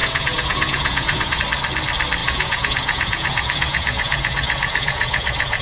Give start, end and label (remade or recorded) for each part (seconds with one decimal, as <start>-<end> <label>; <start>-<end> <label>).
0.0-1.4 remade; 1.4-2.2 recorded; 2.2-5.6 remade